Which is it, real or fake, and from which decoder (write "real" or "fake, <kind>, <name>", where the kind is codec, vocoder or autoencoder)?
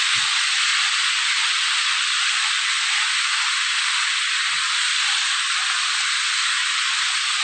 real